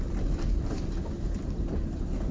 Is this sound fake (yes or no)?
yes